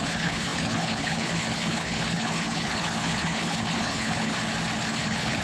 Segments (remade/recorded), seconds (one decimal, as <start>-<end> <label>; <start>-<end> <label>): 0.0-4.3 remade; 4.3-4.9 recorded; 4.9-5.4 remade